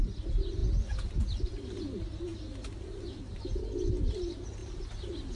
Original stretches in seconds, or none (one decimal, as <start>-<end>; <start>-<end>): 0.0-4.6